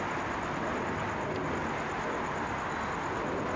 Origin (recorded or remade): recorded